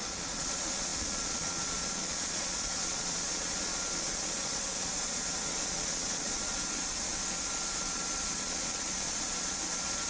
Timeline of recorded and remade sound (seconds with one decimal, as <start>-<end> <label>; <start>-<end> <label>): 0.0-10.1 remade